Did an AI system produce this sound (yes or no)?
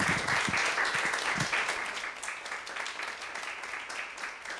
no